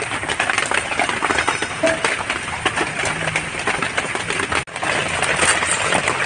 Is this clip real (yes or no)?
yes